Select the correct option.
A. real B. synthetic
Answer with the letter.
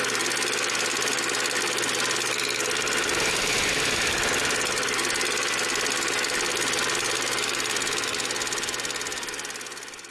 A